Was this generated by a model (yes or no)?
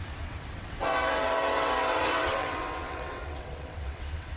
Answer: yes